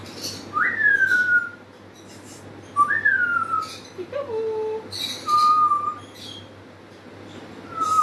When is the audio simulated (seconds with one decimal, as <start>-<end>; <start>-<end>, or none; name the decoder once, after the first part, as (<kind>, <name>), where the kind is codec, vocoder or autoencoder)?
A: none